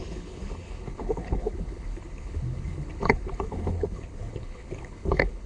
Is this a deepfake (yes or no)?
yes